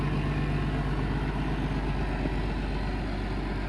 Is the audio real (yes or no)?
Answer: yes